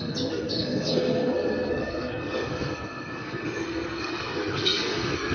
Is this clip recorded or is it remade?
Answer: remade